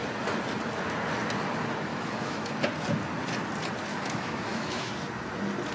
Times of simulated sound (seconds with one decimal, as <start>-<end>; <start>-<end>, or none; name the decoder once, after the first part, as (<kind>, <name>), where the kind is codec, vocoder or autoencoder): 1.9-2.5 (autoencoder, DAC-VAE); 3.9-4.9